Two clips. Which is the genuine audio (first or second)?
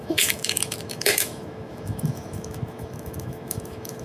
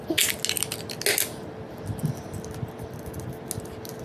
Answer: second